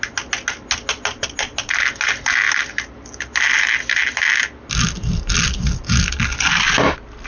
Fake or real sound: real